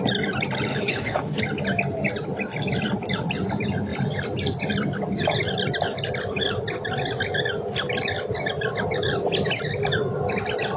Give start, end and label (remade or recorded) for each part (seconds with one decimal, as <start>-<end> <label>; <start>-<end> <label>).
0.0-0.7 recorded; 0.7-1.4 remade; 1.4-10.8 recorded